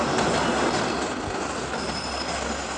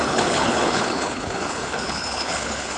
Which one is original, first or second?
first